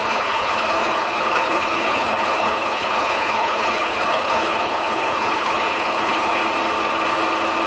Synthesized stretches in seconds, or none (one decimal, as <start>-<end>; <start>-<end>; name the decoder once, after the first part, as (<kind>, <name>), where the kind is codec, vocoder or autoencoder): 0.0-6.4 (codec, HILCodec)